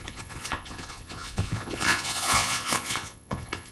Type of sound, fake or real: fake